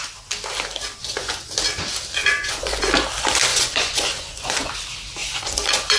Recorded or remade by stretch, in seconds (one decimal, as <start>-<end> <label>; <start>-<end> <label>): 0.0-1.0 recorded; 1.0-1.5 remade; 1.5-2.2 recorded; 2.2-2.8 remade; 2.8-3.5 recorded; 3.5-4.7 remade; 4.7-5.2 recorded; 5.2-6.0 remade